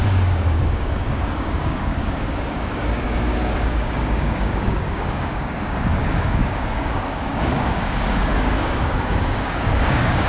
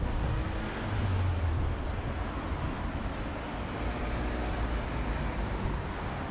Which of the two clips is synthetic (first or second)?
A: first